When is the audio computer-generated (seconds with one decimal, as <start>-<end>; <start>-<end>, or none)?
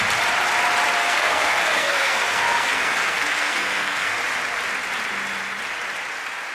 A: 1.0-4.2